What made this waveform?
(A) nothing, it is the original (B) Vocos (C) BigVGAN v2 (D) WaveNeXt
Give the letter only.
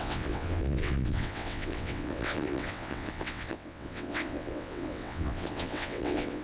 D